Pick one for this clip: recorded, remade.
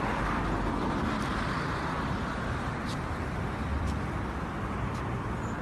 remade